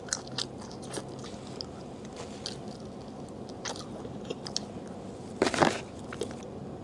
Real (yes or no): yes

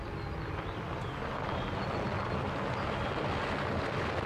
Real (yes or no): yes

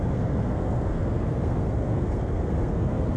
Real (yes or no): no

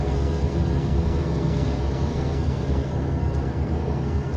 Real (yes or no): no